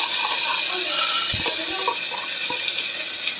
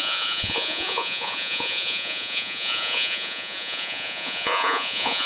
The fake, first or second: second